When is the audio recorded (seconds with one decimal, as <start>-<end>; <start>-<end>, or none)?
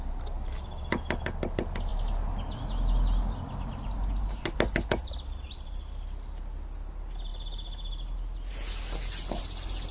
0.0-9.9